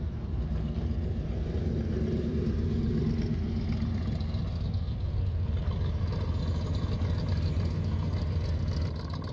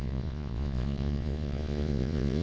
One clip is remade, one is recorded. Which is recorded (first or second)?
first